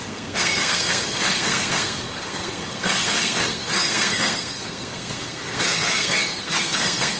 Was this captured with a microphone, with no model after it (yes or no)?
no